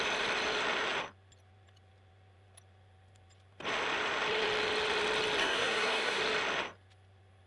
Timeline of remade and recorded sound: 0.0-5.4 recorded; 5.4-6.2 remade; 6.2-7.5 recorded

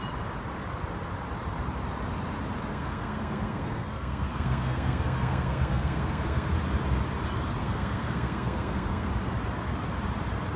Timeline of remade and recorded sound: 0.0-2.7 recorded; 2.7-6.5 remade; 6.5-7.6 recorded; 7.6-9.1 remade; 9.1-10.6 recorded

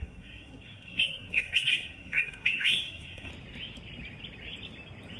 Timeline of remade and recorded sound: 0.0-3.3 remade; 3.3-5.2 recorded

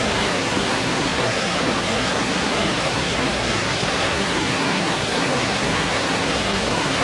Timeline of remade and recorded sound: 0.0-7.0 remade

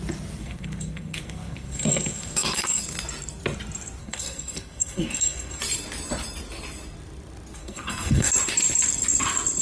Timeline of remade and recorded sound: 0.0-0.4 recorded; 0.4-2.8 remade; 2.8-4.0 recorded; 4.0-5.6 remade; 5.6-7.6 recorded; 7.6-8.3 remade; 8.3-9.6 recorded